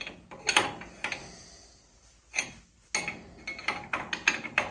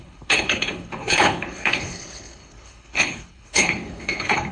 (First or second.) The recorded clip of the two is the first